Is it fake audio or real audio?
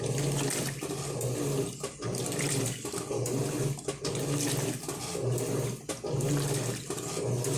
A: real